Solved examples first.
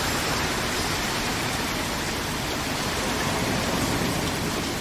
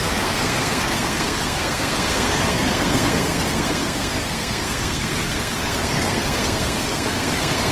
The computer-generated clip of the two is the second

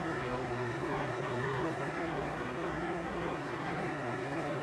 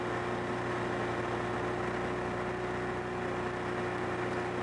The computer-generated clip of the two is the first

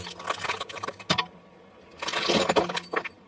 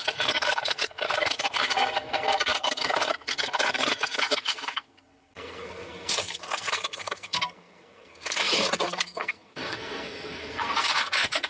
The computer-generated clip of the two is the second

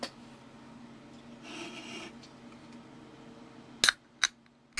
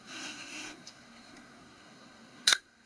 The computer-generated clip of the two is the second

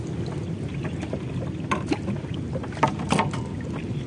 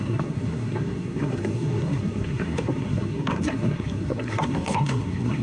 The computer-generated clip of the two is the second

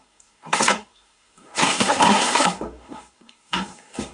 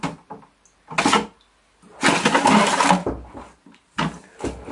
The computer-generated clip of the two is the first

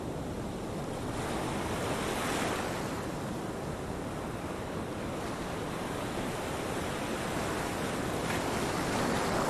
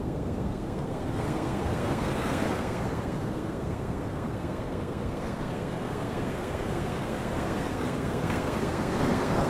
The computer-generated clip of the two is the second